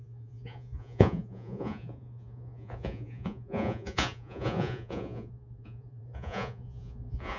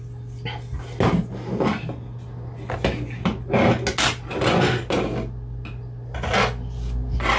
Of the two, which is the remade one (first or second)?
first